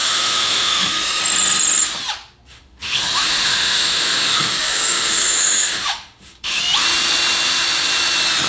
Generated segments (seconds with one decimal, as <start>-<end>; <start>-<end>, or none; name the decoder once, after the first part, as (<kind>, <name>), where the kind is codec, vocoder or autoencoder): 0.0-1.2 (autoencoder, DAC-VAE); 2.5-6.6